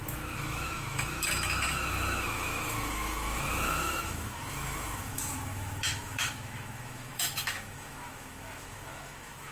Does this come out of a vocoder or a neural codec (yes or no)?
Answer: yes